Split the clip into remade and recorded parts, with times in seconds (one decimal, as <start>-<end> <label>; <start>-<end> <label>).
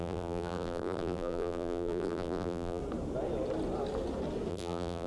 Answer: 0.0-2.8 remade; 2.8-4.5 recorded; 4.5-5.1 remade